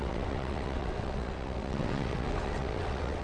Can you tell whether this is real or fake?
fake